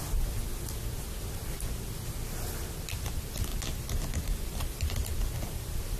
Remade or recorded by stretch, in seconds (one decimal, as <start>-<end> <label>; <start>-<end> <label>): 0.0-6.0 recorded